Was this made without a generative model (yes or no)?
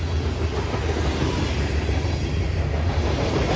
yes